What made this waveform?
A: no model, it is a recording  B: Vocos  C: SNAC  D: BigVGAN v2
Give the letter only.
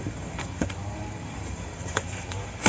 D